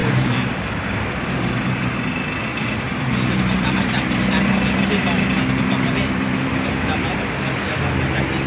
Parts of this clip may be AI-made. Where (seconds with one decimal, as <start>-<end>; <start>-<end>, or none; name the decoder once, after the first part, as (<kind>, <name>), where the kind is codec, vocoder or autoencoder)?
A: 0.0-1.9 (vocoder, BigVGAN v2); 2.5-7.6